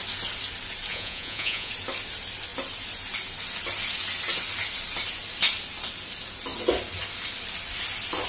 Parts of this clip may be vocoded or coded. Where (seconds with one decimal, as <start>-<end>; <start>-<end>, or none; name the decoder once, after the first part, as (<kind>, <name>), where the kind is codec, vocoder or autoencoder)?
0.9-1.7 (vocoder, Vocos)